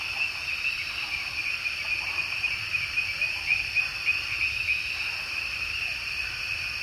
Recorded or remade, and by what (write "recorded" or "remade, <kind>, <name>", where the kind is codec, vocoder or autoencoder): recorded